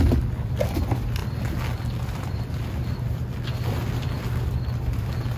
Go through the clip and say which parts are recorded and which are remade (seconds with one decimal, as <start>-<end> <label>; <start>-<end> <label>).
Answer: 0.0-5.4 recorded